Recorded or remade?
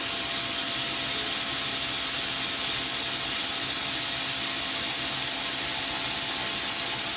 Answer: recorded